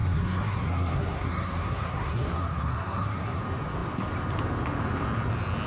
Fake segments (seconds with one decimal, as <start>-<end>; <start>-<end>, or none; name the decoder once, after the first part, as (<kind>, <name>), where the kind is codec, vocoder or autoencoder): 0.0-3.4 (codec, SNAC)